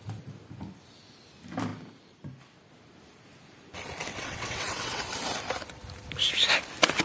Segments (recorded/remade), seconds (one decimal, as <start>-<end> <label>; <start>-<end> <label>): 0.0-4.1 recorded; 4.1-5.1 remade; 5.1-7.0 recorded

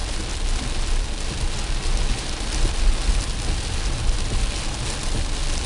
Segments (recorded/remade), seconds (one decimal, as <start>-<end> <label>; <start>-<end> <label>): 0.0-5.7 recorded